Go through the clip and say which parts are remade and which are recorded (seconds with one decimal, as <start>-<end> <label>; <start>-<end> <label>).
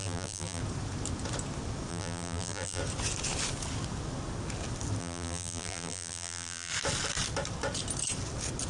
0.0-0.6 remade; 0.6-1.9 recorded; 1.9-2.8 remade; 2.8-5.0 recorded; 5.0-6.7 remade; 6.7-8.7 recorded